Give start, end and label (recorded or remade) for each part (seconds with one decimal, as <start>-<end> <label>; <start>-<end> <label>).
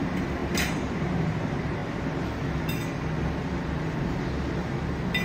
0.0-5.2 recorded